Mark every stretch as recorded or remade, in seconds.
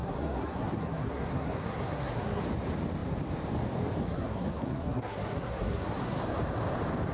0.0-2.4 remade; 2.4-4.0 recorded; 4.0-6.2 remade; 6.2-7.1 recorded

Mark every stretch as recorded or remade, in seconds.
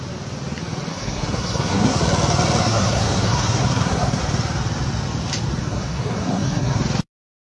0.0-0.9 recorded; 0.9-2.0 remade; 2.0-2.6 recorded; 2.6-4.2 remade; 4.2-5.6 recorded; 5.6-6.8 remade; 6.8-7.5 recorded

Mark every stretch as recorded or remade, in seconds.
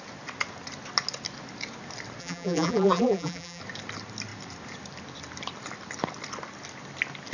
0.0-2.2 recorded; 2.2-3.6 remade; 3.6-7.3 recorded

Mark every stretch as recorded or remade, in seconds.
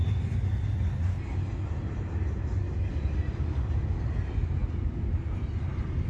0.0-6.1 recorded